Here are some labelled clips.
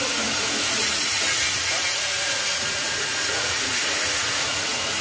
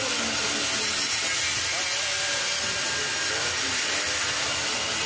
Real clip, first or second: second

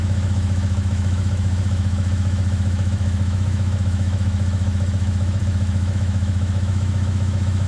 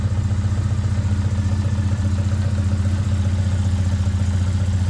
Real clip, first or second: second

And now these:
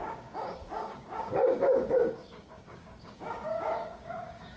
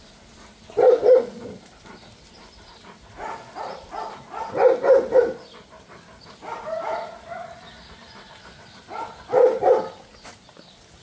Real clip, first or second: second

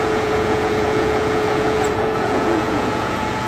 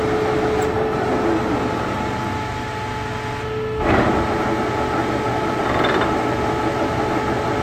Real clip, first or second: second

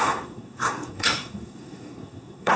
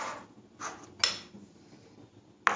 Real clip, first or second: second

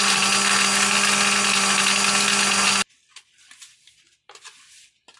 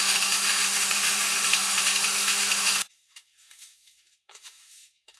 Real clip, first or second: first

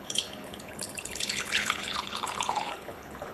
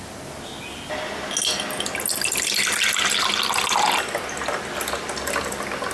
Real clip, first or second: second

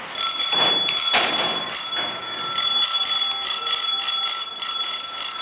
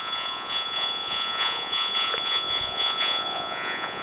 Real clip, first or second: first